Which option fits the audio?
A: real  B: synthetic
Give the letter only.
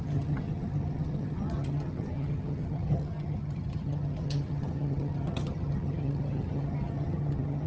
B